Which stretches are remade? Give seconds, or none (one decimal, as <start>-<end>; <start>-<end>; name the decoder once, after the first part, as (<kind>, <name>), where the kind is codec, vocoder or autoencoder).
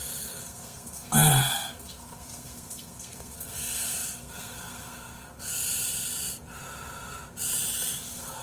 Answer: 0.0-5.5 (codec, SNAC); 8.0-8.4